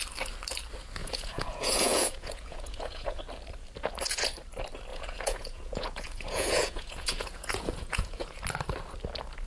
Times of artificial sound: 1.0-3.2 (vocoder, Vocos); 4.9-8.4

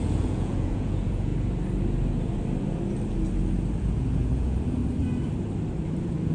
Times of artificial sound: 0.0-1.3 (vocoder, Vocos); 3.8-4.8

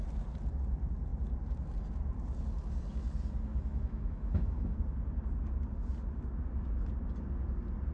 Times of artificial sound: 3.5-4.8 (autoencoder, DAC-VAE)

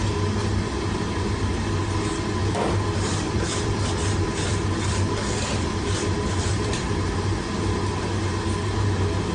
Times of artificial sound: 2.4-7.0 (vocoder, BigVGAN v2)

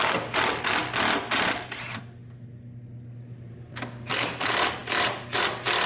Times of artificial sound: none

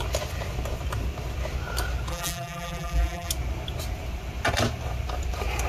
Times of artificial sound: 2.1-3.3 (vocoder, BigVGAN v2)